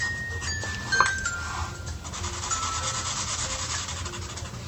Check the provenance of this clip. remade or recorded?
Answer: recorded